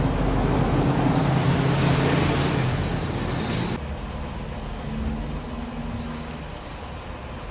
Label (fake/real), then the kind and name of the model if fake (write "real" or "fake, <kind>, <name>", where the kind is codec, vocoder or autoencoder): real